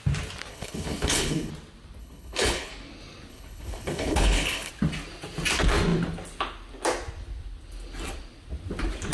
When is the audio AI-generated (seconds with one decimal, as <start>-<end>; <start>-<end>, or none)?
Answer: 0.5-1.5; 2.0-2.7; 3.3-4.7